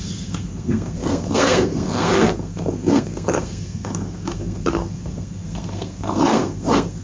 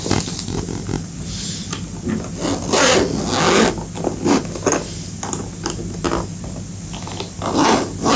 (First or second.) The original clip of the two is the second